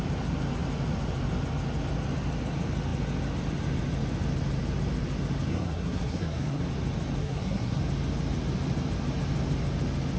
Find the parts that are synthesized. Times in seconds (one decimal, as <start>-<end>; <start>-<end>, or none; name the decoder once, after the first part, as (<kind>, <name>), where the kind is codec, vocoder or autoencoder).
5.5-6.6 (codec, SNAC); 7.2-7.8